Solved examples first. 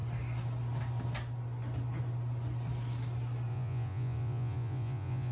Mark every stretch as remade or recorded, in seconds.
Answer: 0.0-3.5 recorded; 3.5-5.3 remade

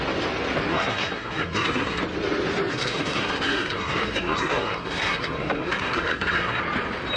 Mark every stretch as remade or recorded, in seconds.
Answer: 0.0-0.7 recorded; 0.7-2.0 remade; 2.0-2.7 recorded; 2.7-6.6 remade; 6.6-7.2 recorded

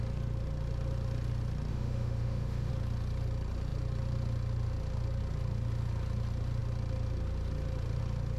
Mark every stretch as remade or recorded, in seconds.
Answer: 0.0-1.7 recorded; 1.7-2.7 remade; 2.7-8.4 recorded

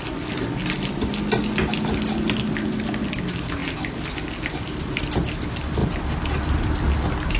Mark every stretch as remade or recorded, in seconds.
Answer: 0.0-7.4 recorded

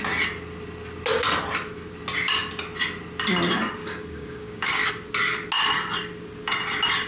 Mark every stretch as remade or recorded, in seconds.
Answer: 0.0-3.8 recorded; 3.8-4.9 remade; 4.9-7.1 recorded